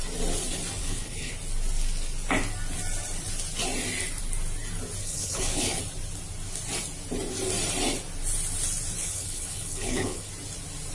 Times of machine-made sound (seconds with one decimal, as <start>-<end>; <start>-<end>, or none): 0.8-1.3; 5.0-5.8; 9.0-10.3